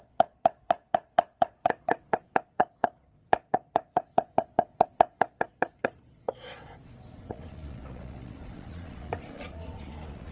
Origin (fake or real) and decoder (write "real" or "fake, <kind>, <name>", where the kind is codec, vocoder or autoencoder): fake, vocoder, Vocos